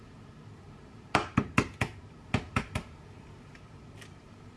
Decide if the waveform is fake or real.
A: fake